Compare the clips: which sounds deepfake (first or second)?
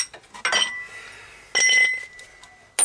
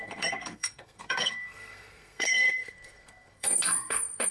second